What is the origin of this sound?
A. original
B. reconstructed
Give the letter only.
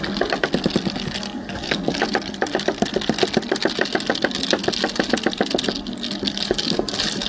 A